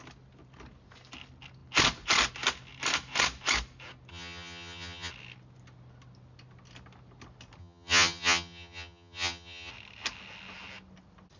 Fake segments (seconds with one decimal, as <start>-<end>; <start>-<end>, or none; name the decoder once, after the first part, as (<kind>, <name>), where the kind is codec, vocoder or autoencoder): 4.1-5.1 (vocoder, HiFi-GAN); 7.6-9.7